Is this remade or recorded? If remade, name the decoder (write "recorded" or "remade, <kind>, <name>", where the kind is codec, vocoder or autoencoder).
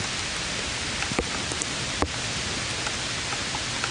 recorded